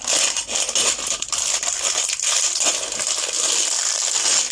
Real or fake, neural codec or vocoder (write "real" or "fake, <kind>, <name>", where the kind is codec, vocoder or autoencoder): real